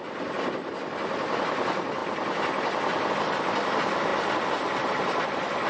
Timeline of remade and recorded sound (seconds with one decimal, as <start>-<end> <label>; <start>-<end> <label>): 0.0-2.0 remade; 2.0-3.1 recorded; 3.1-4.1 remade; 4.1-4.9 recorded; 4.9-5.7 remade